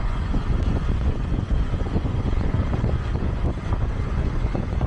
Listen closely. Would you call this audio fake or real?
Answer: fake